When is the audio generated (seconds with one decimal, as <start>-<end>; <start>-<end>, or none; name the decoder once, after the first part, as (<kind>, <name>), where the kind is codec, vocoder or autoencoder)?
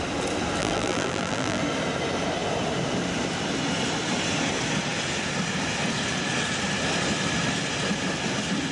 0.6-1.6 (vocoder, BigVGAN v2)